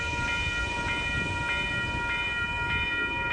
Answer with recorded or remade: recorded